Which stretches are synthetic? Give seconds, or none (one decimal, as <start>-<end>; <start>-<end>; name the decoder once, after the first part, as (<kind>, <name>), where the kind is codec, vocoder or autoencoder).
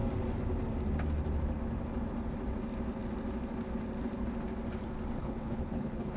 5.2-6.2 (codec, HILCodec)